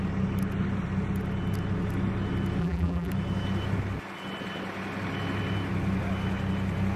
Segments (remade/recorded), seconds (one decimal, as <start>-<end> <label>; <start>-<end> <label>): 0.0-2.6 recorded; 2.6-3.1 remade; 3.1-7.0 recorded